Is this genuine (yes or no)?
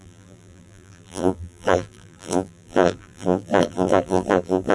no